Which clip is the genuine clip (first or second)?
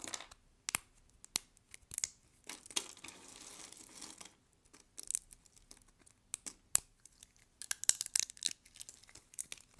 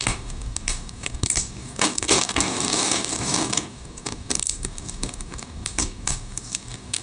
first